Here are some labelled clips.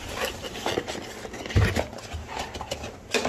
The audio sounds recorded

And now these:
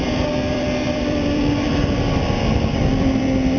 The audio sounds remade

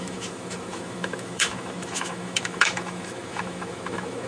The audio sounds remade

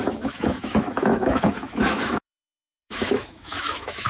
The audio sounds remade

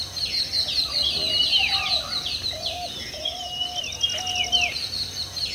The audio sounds recorded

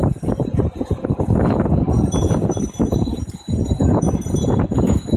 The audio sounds remade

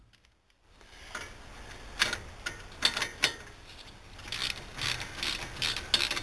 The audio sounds recorded